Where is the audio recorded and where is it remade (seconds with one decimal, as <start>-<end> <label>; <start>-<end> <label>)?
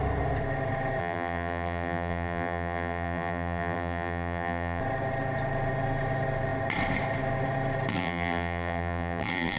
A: 0.0-1.0 recorded; 1.0-4.8 remade; 4.8-7.9 recorded; 7.9-9.6 remade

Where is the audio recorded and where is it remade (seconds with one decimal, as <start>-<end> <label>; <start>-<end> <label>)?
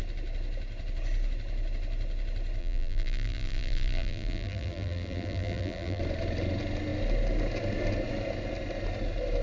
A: 0.0-2.6 recorded; 2.6-6.0 remade; 6.0-9.4 recorded